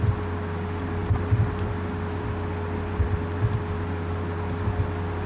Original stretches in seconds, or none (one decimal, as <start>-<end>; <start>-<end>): 0.0-5.3